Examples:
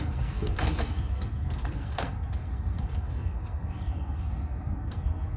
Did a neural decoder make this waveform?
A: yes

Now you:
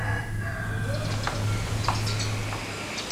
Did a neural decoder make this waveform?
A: no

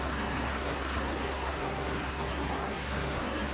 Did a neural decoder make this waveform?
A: yes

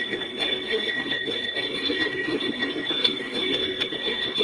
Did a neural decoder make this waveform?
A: yes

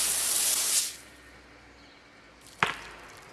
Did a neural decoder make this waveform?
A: no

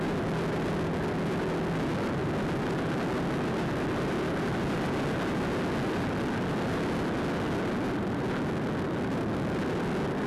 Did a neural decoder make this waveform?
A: no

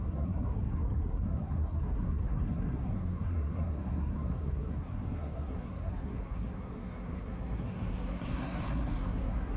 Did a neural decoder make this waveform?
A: yes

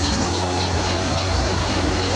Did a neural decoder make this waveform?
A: yes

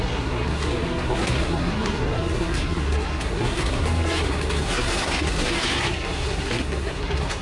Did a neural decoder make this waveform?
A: yes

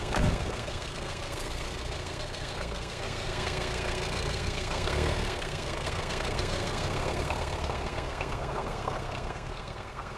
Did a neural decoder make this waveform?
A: yes